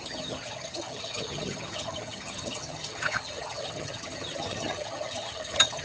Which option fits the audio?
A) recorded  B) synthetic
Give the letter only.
B